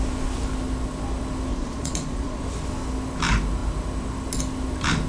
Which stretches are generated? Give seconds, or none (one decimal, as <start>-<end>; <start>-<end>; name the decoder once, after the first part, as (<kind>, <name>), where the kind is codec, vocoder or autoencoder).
1.5-2.4 (vocoder, Vocos)